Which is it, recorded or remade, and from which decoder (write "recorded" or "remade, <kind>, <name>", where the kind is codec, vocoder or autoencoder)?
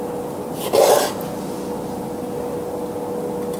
recorded